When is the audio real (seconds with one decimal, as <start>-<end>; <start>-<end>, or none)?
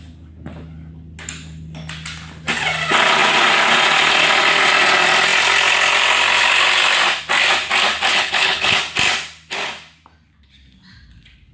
0.0-8.1; 8.8-11.5